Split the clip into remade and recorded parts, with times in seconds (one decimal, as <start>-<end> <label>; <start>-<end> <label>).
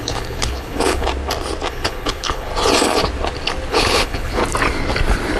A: 0.0-1.1 remade; 1.1-1.7 recorded; 1.7-2.5 remade; 2.5-3.7 recorded; 3.7-4.4 remade; 4.4-5.4 recorded